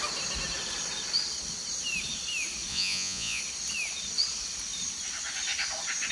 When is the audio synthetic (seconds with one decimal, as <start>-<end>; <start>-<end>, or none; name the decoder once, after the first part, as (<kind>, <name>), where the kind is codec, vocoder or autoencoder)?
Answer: 2.7-3.4 (vocoder, Vocos)